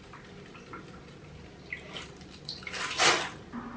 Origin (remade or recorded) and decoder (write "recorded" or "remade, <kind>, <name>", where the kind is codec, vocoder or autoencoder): recorded